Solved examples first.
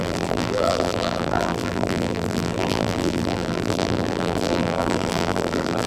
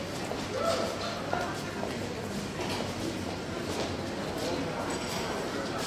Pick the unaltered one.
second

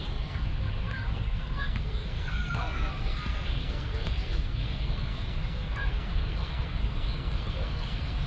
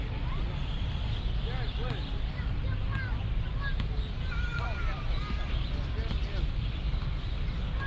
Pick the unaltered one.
second